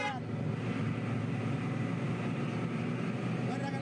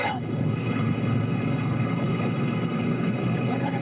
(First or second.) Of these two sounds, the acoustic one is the first